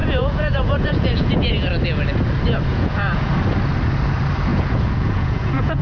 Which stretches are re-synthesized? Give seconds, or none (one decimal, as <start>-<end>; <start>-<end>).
0.0-1.5; 2.7-3.3; 4.5-5.8